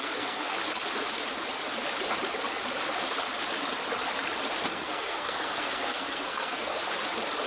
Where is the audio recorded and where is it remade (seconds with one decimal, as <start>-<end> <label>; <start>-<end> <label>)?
0.0-0.6 remade; 0.6-4.7 recorded; 4.7-6.8 remade; 6.8-7.5 recorded

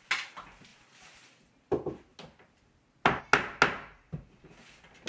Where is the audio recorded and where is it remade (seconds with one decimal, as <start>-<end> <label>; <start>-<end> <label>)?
0.0-5.1 recorded

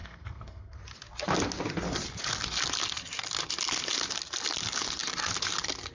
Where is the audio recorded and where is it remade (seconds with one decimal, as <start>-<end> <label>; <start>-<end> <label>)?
0.0-0.8 remade; 0.8-5.9 recorded

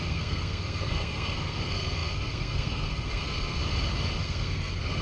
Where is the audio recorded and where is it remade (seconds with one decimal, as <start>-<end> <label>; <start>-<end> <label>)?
0.0-3.6 remade; 3.6-4.2 recorded; 4.2-5.0 remade